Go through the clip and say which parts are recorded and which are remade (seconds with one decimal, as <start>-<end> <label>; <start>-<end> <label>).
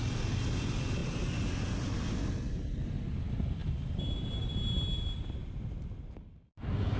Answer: 0.0-7.0 recorded